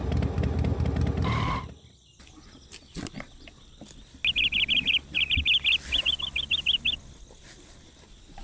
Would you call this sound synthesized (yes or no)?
no